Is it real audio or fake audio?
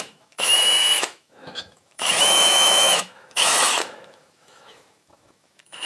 fake